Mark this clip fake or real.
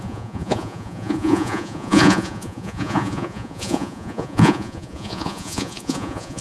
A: fake